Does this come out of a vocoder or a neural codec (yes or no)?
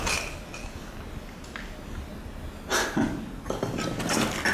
no